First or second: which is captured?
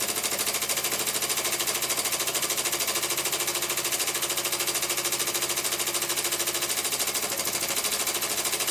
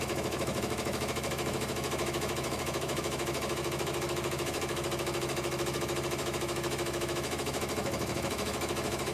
first